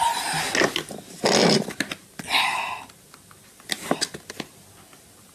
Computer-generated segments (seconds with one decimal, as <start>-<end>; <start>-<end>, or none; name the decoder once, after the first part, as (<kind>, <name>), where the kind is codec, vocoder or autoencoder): none